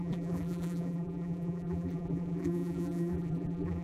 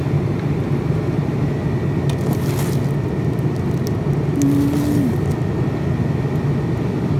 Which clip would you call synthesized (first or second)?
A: first